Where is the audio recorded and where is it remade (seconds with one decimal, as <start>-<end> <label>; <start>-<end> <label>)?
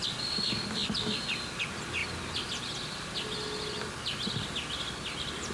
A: 0.0-5.5 recorded